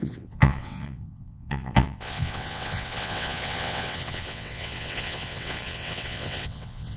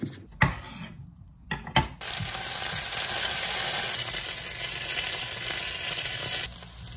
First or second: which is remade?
first